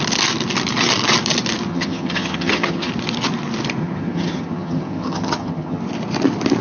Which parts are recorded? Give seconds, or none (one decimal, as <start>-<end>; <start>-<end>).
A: 0.0-1.7; 2.9-3.8; 5.8-6.6

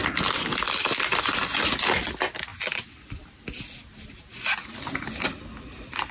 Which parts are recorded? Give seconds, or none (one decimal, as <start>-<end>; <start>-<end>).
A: 0.0-6.1

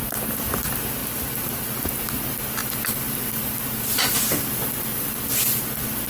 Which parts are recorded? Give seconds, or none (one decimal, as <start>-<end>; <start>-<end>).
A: 0.0-1.0; 1.6-2.6; 3.5-6.1

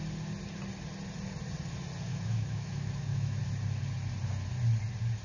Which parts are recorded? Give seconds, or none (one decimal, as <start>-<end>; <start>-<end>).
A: 0.0-2.1; 3.4-5.2